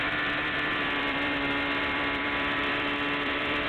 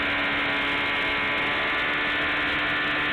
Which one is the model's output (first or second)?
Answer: first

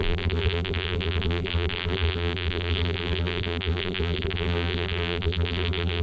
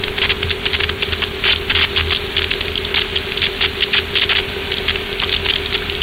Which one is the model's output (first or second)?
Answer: first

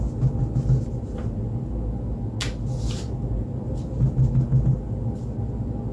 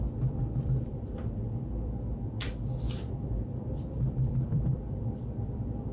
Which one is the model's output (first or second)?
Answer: second